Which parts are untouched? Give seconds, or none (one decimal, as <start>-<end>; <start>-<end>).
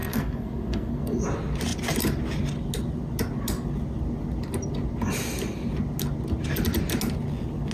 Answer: 1.2-7.7